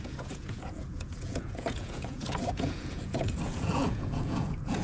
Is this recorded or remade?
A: remade